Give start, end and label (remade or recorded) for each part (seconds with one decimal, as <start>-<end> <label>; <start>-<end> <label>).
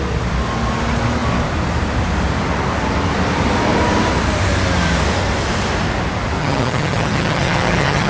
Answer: 0.0-6.4 recorded; 6.4-8.1 remade